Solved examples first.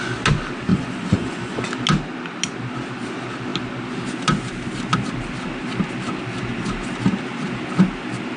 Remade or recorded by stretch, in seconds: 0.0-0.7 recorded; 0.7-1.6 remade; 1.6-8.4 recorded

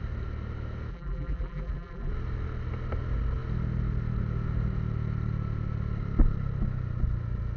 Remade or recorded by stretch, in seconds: 0.0-0.9 recorded; 0.9-2.1 remade; 2.1-7.6 recorded